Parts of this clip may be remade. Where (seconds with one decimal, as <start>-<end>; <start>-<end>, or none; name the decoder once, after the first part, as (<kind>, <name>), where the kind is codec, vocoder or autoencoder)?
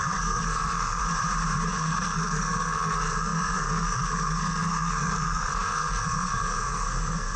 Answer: 0.0-1.0 (codec, SNAC); 1.7-7.4